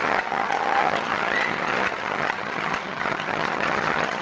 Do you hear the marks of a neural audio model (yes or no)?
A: yes